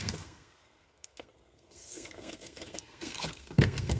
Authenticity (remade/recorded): remade